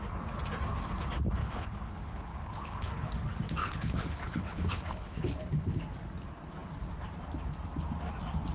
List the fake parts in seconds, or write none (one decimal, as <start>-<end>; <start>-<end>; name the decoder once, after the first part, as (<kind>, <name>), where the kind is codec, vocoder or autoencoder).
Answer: 1.4-3.1 (codec, HILCodec); 3.6-5.8